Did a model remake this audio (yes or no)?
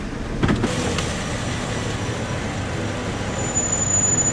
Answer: no